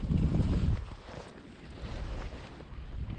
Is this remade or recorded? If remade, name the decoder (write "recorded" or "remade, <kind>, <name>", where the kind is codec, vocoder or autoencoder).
recorded